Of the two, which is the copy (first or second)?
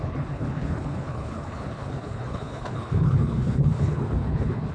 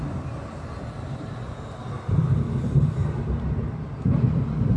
first